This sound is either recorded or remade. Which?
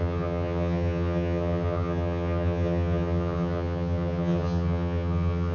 remade